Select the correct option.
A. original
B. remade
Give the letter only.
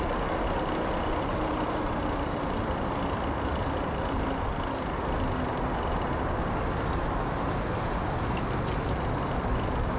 A